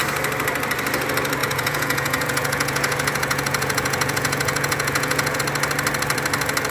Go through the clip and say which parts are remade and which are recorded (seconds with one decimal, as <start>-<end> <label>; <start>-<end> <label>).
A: 0.0-1.4 recorded; 1.4-5.4 remade; 5.4-6.7 recorded

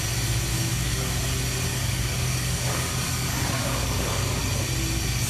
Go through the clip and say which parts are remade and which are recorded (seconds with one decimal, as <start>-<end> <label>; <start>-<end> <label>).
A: 0.0-0.5 recorded; 0.5-1.2 remade; 1.2-1.7 recorded; 1.7-4.4 remade; 4.4-5.3 recorded